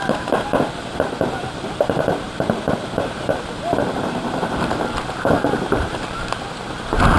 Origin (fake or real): fake